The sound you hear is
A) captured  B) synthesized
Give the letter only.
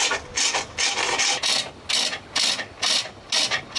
A